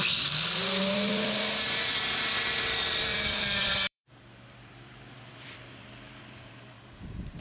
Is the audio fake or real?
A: fake